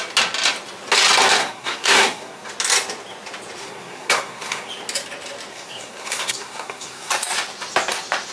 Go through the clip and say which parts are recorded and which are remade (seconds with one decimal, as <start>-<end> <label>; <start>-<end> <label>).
0.0-1.4 recorded; 1.4-2.5 remade; 2.5-3.6 recorded; 3.6-4.7 remade; 4.7-5.5 recorded; 5.5-7.1 remade; 7.1-8.3 recorded